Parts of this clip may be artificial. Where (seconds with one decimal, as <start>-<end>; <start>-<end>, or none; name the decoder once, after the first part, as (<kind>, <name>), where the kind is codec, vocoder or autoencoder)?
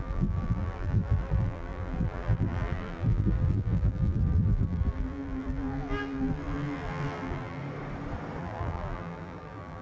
0.0-7.6 (vocoder, BigVGAN v2); 8.4-9.8